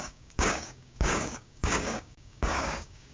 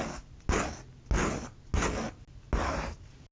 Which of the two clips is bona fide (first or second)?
second